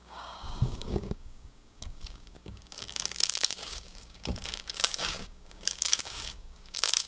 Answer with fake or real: fake